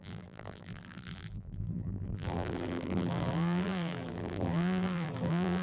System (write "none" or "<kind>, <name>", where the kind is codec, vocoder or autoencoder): vocoder, BigVGAN v2